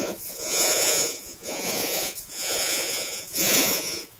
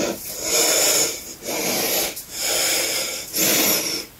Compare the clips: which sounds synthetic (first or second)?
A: first